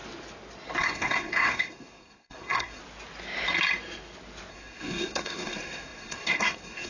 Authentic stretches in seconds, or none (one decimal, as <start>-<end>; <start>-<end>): 0.0-0.8; 2.8-4.5